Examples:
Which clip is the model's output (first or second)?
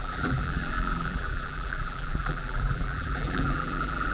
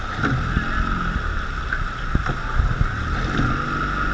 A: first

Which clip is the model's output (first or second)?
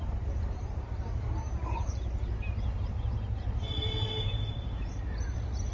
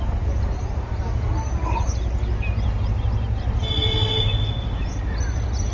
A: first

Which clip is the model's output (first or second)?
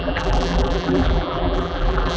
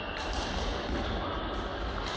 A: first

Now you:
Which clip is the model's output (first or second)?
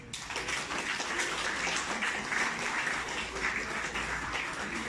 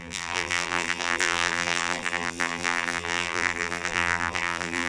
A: second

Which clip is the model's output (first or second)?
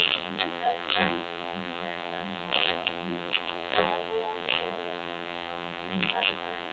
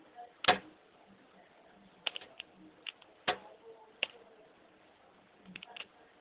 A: first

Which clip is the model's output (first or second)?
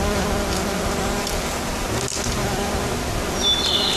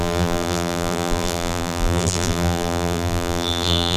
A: second